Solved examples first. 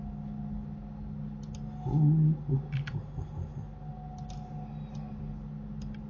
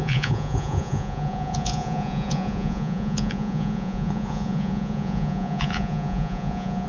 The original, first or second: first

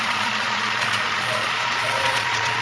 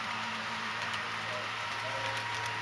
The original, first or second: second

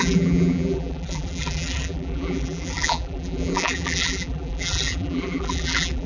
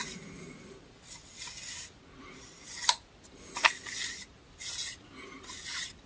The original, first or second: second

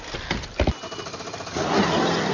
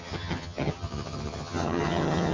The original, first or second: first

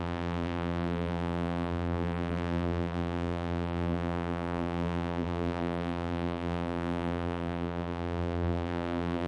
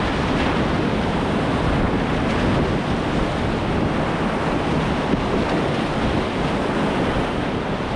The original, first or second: second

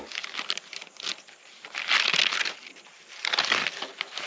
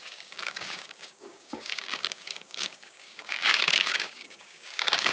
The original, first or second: first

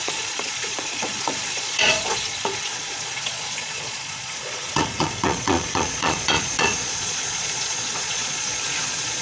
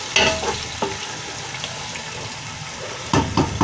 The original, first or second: second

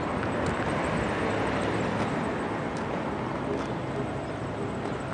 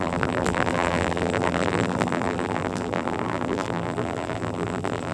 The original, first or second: first